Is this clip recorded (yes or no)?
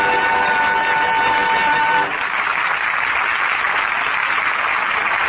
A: yes